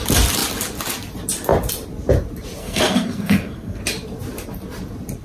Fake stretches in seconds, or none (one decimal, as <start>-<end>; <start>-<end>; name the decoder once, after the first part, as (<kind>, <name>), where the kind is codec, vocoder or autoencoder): 2.6-3.8 (codec, SNAC)